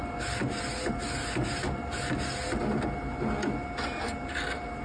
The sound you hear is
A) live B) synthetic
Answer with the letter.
A